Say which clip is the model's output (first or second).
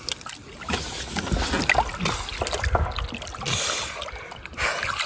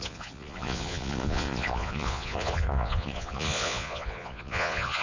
second